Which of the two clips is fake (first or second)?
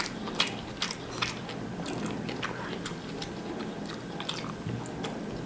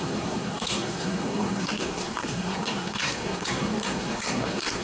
second